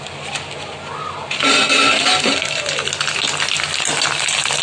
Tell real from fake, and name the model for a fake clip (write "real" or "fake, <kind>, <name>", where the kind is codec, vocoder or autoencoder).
real